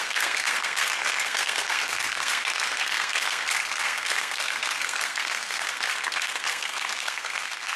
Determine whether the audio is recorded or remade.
remade